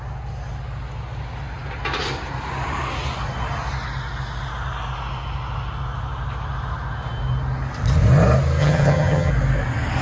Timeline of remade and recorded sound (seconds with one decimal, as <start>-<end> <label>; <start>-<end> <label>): 0.0-8.6 recorded; 8.6-9.3 remade; 9.3-10.0 recorded